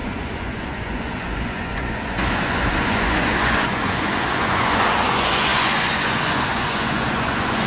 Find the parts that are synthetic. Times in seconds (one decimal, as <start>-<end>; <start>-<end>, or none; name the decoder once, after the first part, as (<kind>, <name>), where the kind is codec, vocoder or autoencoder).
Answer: 0.0-7.7 (vocoder, Vocos)